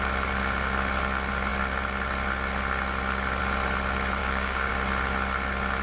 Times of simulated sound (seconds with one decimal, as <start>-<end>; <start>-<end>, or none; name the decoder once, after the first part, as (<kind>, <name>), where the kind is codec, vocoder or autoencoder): 4.2-4.7 (codec, DAC)